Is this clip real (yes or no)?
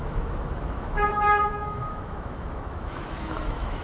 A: no